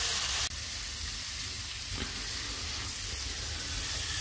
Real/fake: real